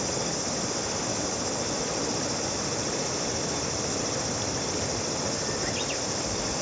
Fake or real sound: real